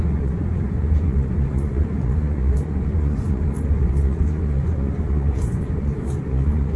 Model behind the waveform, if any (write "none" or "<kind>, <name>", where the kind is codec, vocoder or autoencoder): vocoder, Vocos